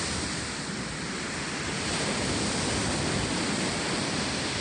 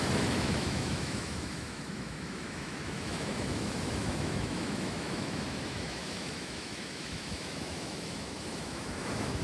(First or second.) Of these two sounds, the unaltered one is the first